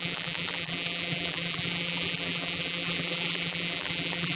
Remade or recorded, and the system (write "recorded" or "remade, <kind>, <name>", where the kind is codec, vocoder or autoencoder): remade, vocoder, BigVGAN v2